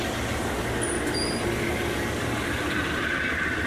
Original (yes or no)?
yes